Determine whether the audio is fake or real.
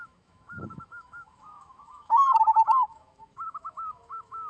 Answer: fake